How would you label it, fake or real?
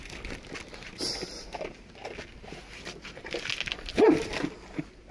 real